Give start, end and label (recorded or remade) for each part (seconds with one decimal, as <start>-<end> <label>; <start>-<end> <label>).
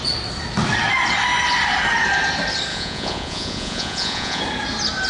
0.0-2.7 recorded; 2.7-4.4 remade; 4.4-5.1 recorded